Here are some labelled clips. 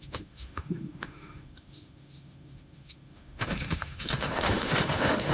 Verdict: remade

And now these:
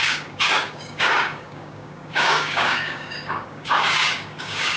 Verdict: remade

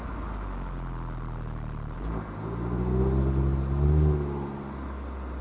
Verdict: recorded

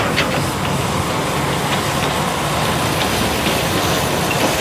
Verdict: recorded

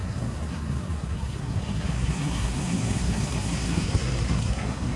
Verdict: remade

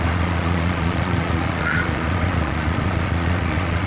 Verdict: remade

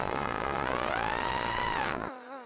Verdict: remade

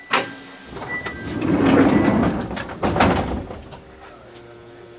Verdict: recorded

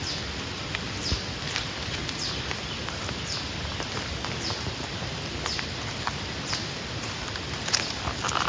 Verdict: recorded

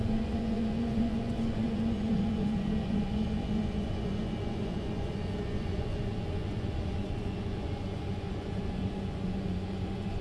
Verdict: remade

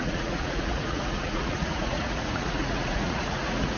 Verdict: remade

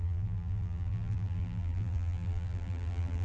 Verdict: remade